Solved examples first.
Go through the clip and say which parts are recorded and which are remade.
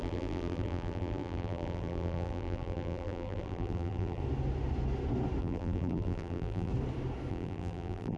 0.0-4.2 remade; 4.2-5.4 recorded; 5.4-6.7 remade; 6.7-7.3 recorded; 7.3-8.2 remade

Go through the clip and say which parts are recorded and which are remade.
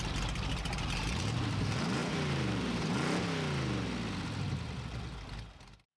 0.0-2.0 recorded; 2.0-2.9 remade; 2.9-6.0 recorded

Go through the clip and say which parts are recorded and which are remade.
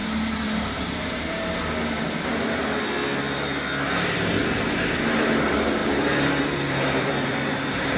0.0-1.4 remade; 1.4-5.8 recorded; 5.8-8.0 remade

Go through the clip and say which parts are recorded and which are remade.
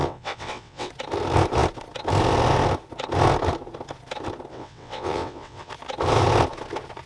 0.0-0.9 remade; 0.9-4.5 recorded; 4.5-5.7 remade; 5.7-7.1 recorded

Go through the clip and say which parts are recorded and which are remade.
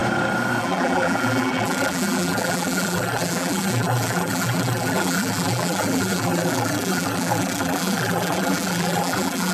0.0-0.6 recorded; 0.6-9.5 remade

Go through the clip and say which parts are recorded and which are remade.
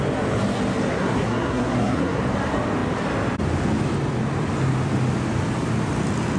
0.0-0.9 recorded; 0.9-2.2 remade; 2.2-6.4 recorded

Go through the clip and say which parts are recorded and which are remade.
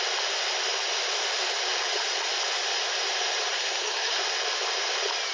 0.0-3.5 recorded; 3.5-4.2 remade; 4.2-5.3 recorded